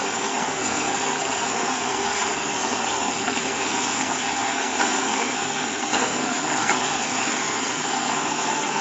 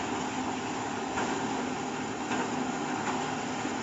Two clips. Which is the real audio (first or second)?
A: second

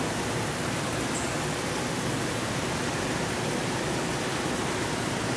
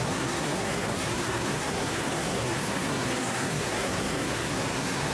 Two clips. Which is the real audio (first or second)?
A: first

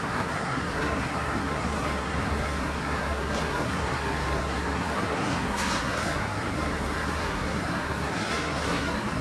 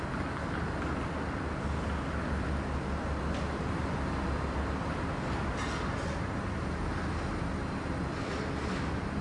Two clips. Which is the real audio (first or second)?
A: second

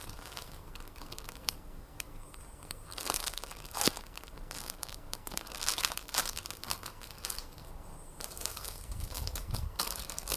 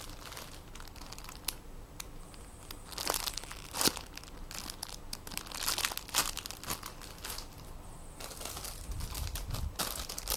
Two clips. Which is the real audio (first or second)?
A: second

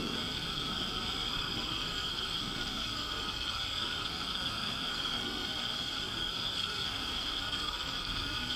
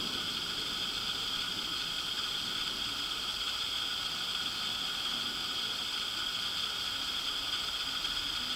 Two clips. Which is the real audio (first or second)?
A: second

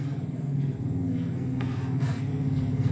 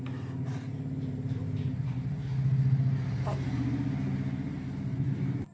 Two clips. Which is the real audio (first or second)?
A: second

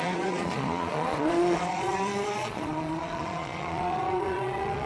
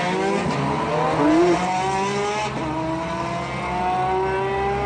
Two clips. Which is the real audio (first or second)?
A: second